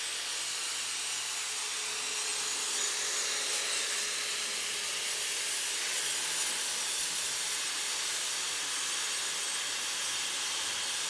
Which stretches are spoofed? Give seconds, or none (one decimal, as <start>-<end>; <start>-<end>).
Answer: none